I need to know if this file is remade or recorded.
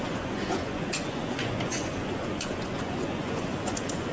remade